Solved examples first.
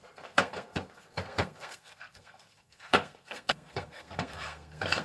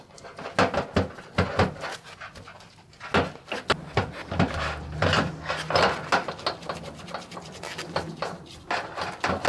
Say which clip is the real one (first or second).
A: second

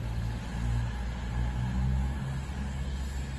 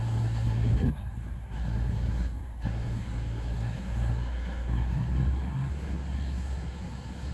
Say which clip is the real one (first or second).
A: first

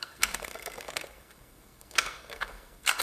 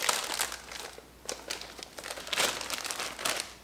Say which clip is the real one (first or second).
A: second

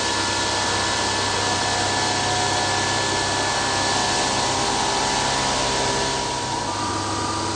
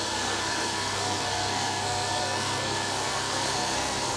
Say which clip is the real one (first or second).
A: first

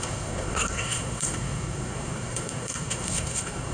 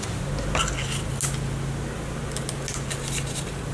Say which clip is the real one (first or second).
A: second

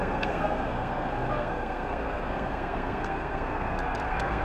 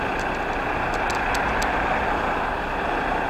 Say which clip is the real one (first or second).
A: second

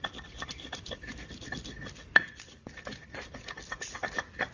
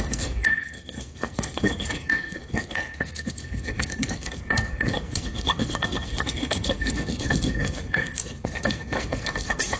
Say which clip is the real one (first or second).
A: first